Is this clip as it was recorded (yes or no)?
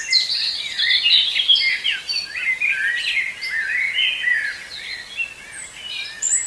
yes